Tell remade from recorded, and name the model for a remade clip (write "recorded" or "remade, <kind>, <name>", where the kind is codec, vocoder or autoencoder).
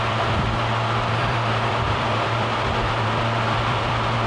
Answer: remade, vocoder, BigVGAN v2